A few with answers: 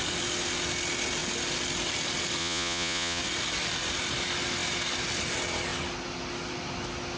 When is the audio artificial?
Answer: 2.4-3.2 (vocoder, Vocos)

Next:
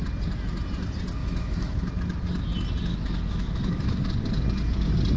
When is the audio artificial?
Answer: 1.2-1.9 (autoencoder, DAC-VAE); 2.9-4.1